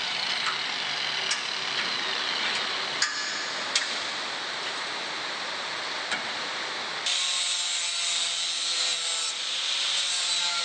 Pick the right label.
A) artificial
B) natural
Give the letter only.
B